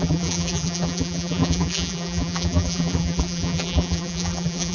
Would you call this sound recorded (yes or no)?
no